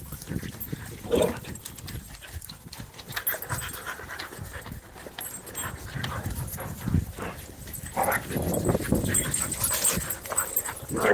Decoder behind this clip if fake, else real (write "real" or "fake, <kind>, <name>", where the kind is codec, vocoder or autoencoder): real